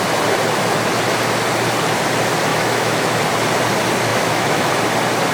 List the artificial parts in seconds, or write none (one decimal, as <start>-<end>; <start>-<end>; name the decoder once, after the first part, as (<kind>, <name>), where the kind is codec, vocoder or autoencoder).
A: 2.5-3.2 (autoencoder, DAC-VAE); 4.1-4.7